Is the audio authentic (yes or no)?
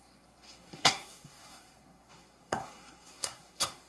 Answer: no